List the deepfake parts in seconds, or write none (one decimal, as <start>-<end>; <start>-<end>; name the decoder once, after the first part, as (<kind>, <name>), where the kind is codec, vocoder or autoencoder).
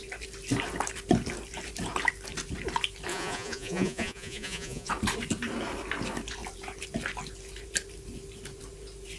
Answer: 3.1-4.9 (vocoder, Vocos)